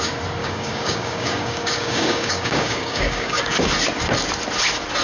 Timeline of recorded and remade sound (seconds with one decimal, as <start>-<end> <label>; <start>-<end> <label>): 0.0-0.4 recorded; 0.4-3.4 remade; 3.4-5.0 recorded